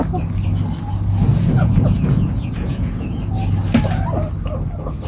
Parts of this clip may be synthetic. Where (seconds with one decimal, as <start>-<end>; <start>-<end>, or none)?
1.3-3.2